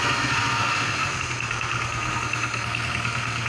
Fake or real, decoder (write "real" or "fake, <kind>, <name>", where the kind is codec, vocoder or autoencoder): fake, codec, SNAC